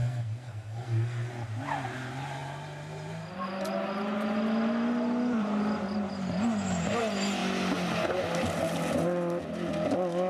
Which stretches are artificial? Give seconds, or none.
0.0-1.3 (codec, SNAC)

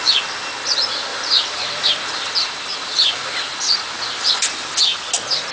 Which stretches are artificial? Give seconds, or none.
1.1-1.7 (vocoder, BigVGAN v2); 4.9-5.5

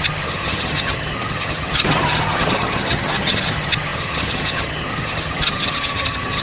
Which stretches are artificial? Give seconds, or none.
0.0-6.4 (vocoder, HiFi-GAN)

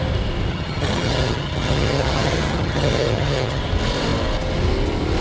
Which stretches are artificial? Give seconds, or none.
0.5-3.6 (vocoder, HiFi-GAN)